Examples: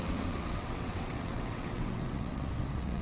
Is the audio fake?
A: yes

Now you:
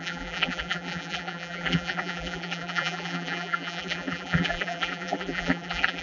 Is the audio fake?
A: yes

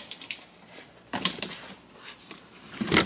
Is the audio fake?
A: yes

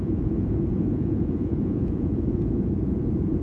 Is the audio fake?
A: yes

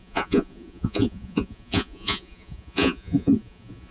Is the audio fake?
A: yes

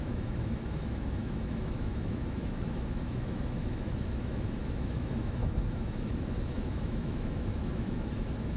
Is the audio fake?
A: yes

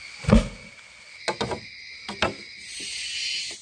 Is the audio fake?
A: no